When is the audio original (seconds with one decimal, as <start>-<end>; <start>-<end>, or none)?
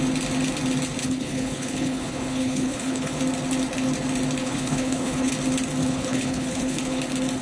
0.0-1.0; 3.2-4.4; 5.3-5.8; 7.0-7.4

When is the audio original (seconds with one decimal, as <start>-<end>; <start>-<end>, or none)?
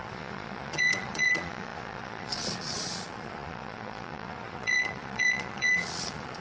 none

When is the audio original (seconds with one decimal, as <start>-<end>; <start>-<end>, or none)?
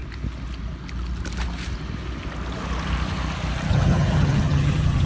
0.0-3.7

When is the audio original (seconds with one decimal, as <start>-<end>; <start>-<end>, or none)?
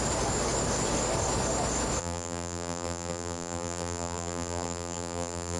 0.0-2.0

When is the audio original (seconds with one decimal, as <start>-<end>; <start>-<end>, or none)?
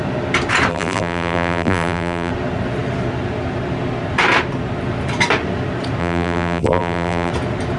0.0-0.7; 2.3-6.0; 7.3-7.8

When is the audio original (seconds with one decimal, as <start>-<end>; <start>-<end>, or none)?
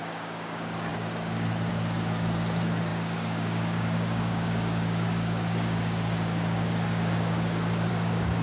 none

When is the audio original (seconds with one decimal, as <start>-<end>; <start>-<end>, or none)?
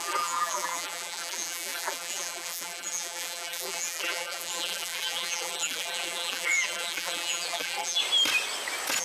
8.0-9.0